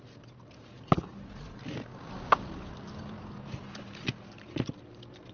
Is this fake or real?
real